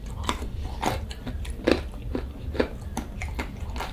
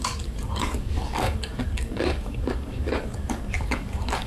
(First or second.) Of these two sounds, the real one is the first